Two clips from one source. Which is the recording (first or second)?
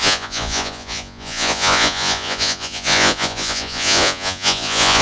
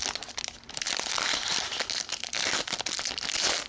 second